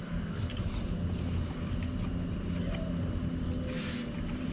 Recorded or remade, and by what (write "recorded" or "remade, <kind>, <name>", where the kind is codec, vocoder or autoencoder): recorded